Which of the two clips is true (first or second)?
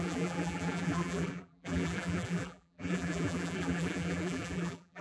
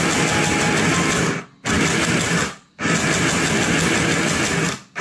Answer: second